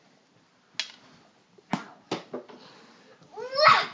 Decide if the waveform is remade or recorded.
recorded